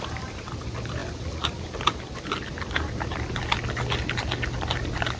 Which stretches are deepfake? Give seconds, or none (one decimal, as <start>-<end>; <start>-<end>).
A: none